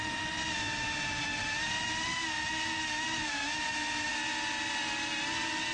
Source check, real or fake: real